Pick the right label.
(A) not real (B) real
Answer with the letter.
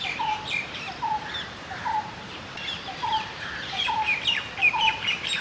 A